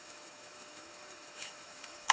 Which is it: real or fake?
fake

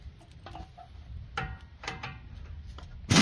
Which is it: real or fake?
real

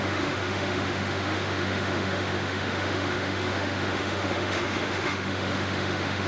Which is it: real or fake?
fake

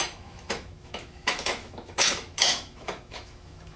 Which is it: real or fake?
fake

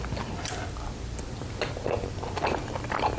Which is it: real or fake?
real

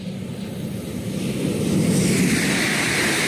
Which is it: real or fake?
real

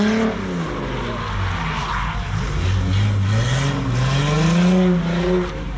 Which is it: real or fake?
real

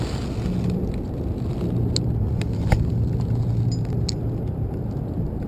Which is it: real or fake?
real